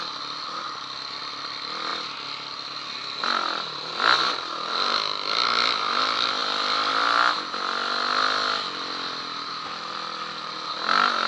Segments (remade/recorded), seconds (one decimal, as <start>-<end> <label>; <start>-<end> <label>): 0.0-6.4 recorded; 6.4-6.9 remade; 6.9-11.3 recorded